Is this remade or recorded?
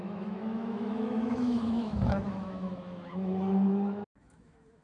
remade